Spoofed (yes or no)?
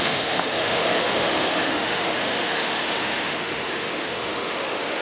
yes